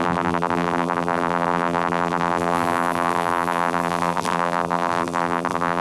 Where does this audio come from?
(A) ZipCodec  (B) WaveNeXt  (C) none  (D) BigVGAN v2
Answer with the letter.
D